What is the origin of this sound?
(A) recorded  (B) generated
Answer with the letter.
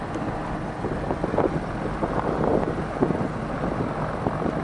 A